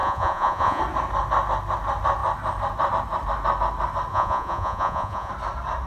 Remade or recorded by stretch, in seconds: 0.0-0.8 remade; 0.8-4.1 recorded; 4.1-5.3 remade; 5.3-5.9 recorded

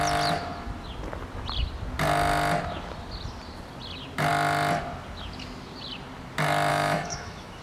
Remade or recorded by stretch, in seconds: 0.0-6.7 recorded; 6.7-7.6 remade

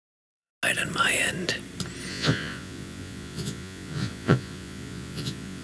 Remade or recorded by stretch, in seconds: 0.0-0.5 remade; 0.5-2.1 recorded; 2.1-5.6 remade

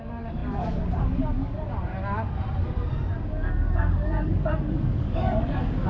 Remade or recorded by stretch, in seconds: 0.0-1.9 remade; 1.9-3.3 recorded; 3.3-5.9 remade

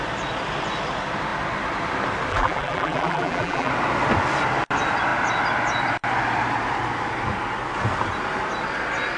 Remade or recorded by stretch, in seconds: 0.0-2.3 recorded; 2.3-3.7 remade; 3.7-9.2 recorded

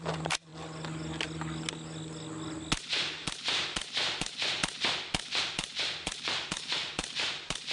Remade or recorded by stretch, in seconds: 0.0-0.5 remade; 0.5-3.0 recorded; 3.0-4.6 remade; 4.6-5.4 recorded; 5.4-7.7 remade

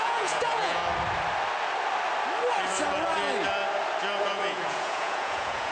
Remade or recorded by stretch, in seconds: 0.0-0.8 remade; 0.8-4.2 recorded; 4.2-5.7 remade

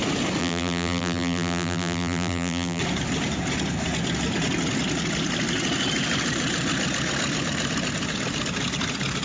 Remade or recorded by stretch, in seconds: 0.0-0.4 recorded; 0.4-2.8 remade; 2.8-9.2 recorded